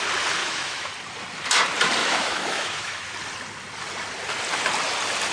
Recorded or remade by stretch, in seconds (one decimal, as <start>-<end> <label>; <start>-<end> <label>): 0.0-0.4 recorded; 0.4-0.9 remade; 0.9-2.0 recorded; 2.0-3.1 remade; 3.1-5.3 recorded